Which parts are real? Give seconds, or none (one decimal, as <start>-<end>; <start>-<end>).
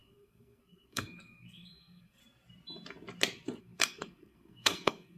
2.2-3.6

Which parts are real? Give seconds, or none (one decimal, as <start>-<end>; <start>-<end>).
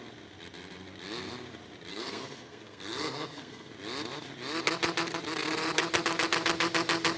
0.0-1.9; 3.7-7.2